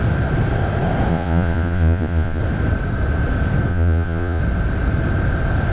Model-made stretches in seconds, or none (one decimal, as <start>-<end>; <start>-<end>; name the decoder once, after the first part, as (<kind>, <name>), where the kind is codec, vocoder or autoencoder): 1.1-2.4 (vocoder, Vocos); 3.7-4.4